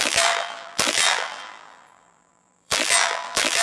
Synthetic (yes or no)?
yes